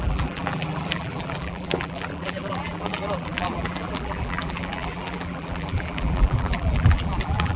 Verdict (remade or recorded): remade